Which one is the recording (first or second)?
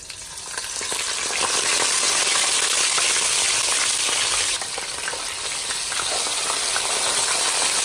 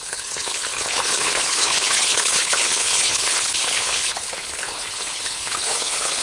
first